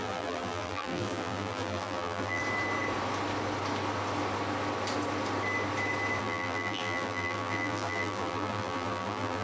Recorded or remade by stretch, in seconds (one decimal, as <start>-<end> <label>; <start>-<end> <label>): 0.0-2.4 remade; 2.4-6.2 recorded; 6.2-9.4 remade